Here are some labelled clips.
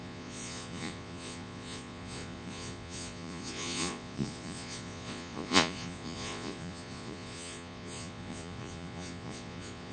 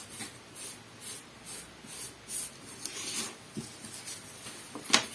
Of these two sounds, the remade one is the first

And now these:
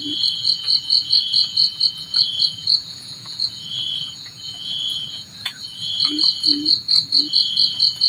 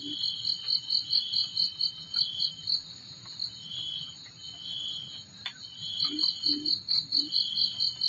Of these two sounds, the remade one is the first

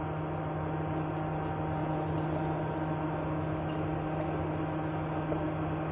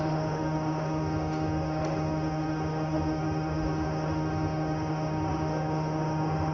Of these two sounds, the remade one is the second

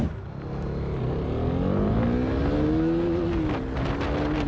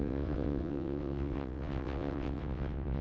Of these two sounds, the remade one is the second